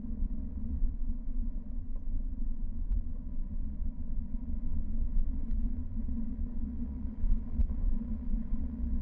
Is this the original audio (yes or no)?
no